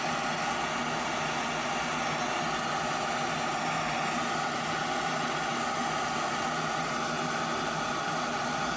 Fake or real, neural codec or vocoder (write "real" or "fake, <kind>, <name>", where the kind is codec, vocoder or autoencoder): real